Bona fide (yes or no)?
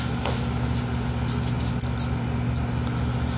yes